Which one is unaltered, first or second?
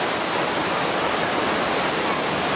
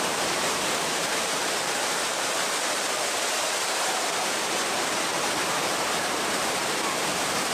first